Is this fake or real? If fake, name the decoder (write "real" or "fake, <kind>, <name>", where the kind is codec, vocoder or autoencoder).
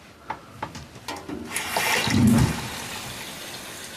real